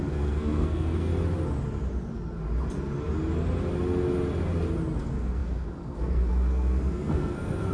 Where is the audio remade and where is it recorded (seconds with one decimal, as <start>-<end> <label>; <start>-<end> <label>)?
0.0-1.1 remade; 1.1-5.0 recorded; 5.0-7.7 remade